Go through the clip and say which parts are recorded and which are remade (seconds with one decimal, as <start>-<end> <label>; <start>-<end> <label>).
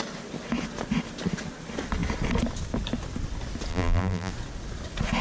0.0-3.7 recorded; 3.7-4.3 remade; 4.3-5.2 recorded